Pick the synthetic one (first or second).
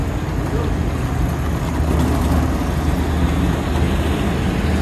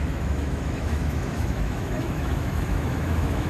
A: second